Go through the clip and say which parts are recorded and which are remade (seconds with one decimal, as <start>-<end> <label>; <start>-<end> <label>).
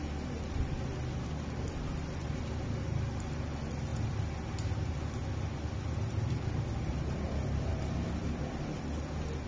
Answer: 0.0-9.5 recorded